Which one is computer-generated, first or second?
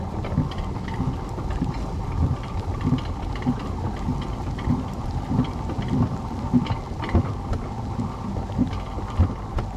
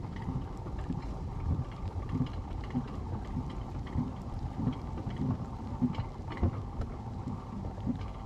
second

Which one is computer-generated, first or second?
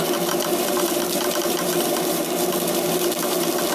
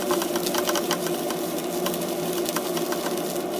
first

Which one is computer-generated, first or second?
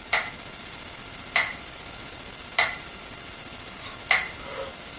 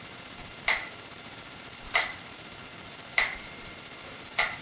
second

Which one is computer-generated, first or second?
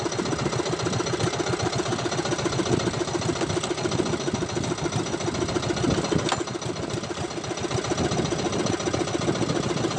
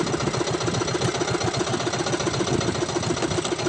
first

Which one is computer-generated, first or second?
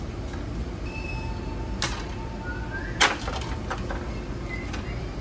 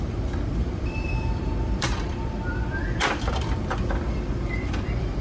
second